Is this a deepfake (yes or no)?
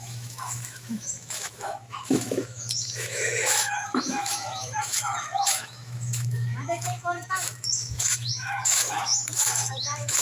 yes